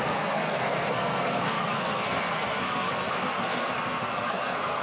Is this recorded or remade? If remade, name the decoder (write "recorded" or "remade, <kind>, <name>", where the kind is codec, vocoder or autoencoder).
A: remade, codec, SNAC